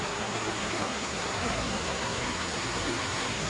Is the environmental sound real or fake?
fake